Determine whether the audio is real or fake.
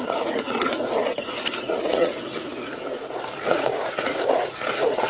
fake